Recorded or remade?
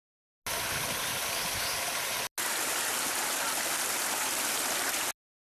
recorded